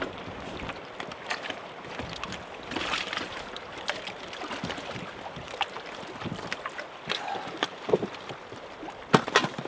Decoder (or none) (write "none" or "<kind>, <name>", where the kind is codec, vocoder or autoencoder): none